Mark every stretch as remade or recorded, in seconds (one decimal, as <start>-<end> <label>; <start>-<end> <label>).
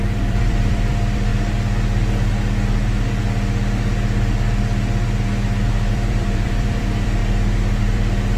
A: 0.0-1.3 remade; 1.3-5.9 recorded; 5.9-7.2 remade; 7.2-7.8 recorded; 7.8-8.4 remade